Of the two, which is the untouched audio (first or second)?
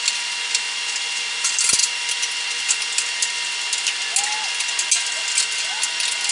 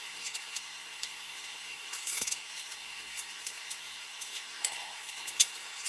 first